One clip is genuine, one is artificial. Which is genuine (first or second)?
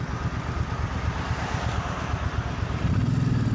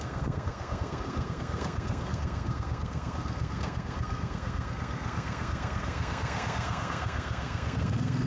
first